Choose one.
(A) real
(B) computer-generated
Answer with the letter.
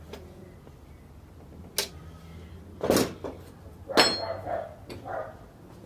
A